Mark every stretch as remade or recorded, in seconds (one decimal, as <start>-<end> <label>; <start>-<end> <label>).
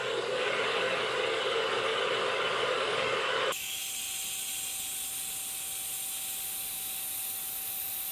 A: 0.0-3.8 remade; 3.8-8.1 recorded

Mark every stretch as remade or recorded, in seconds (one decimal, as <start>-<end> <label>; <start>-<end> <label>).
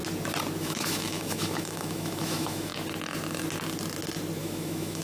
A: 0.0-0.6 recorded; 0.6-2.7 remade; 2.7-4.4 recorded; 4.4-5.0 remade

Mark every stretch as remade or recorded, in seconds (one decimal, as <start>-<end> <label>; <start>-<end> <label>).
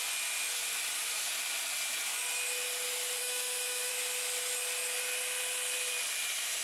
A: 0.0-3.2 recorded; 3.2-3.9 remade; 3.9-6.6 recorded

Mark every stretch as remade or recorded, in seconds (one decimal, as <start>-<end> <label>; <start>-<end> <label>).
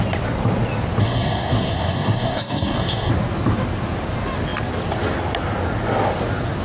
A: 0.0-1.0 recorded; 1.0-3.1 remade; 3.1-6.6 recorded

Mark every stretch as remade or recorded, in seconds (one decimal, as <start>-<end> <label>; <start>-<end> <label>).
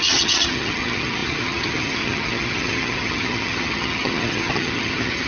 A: 0.0-5.3 remade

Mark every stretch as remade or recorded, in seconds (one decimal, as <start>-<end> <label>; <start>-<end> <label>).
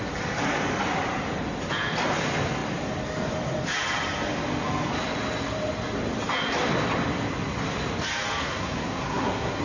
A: 0.0-8.4 recorded; 8.4-9.6 remade